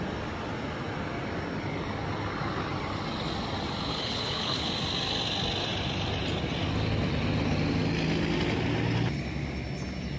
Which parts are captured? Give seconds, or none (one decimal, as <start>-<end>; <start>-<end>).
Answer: 0.0-3.9; 4.7-10.2